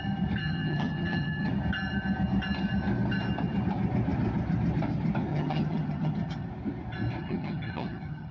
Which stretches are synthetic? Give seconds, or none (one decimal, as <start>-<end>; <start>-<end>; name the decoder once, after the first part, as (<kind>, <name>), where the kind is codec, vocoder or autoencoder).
0.4-1.5 (vocoder, HiFi-GAN); 5.3-6.5; 7.2-8.3